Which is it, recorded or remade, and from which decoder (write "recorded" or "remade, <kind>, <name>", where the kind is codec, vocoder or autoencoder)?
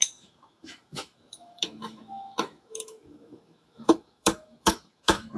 remade, autoencoder, DAC-VAE